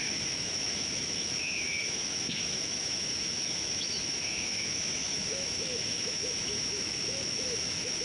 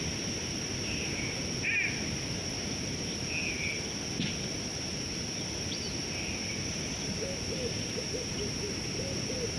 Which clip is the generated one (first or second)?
first